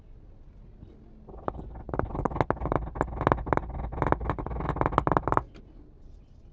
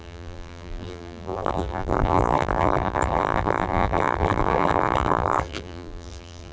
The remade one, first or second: second